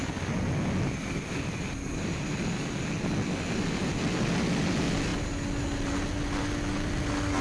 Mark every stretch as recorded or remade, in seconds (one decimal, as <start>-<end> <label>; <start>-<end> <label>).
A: 0.0-7.4 recorded